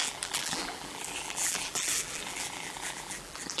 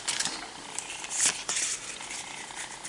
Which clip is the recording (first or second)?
second